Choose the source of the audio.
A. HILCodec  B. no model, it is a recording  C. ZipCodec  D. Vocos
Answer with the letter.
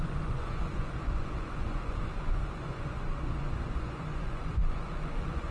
D